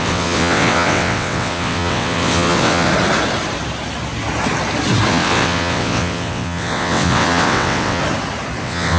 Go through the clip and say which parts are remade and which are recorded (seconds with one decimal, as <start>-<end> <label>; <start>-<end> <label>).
0.0-2.9 remade; 2.9-5.1 recorded; 5.1-8.0 remade; 8.0-8.6 recorded; 8.6-9.0 remade